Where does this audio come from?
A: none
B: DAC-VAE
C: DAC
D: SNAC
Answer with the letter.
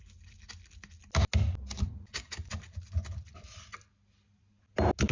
A